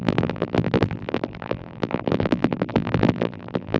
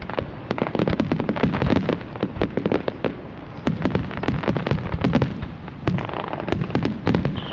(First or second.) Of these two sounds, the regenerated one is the first